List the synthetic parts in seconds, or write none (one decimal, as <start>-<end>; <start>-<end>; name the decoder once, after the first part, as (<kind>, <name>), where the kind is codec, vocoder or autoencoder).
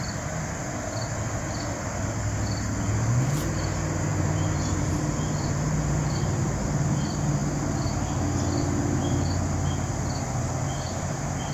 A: 4.1-4.9 (vocoder, BigVGAN v2)